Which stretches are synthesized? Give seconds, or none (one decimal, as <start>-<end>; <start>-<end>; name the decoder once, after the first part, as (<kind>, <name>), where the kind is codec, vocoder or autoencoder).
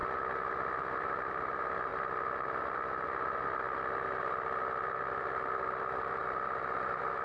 0.5-7.2 (vocoder, BigVGAN v2)